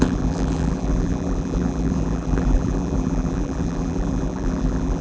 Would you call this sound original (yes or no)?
no